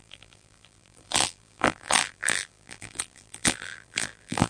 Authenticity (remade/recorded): remade